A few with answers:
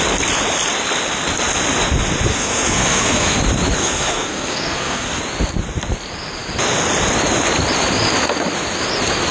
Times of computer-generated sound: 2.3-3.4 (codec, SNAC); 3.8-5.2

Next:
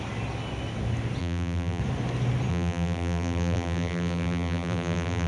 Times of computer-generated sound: 1.2-1.8 (vocoder, BigVGAN v2); 2.5-5.3

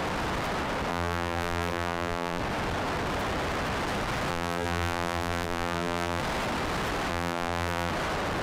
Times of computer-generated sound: 0.9-2.4 (vocoder, BigVGAN v2); 4.3-6.2; 7.1-7.9

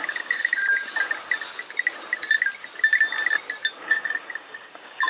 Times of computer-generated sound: 0.0-0.6 (codec, DAC); 3.7-5.1

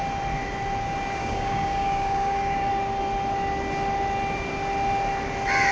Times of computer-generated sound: 1.2-2.7 (codec, DAC)

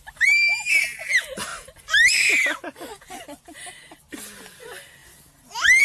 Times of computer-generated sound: none

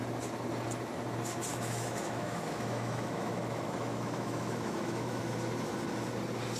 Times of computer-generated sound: 1.5-5.2 (autoencoder, DAC-VAE)